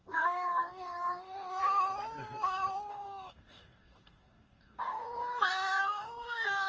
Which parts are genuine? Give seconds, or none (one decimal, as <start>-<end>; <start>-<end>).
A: 1.6-2.9